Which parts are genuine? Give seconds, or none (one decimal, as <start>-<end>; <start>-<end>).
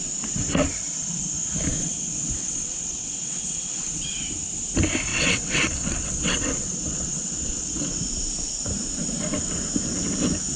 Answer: 0.0-1.8; 4.1-5.1; 8.0-10.6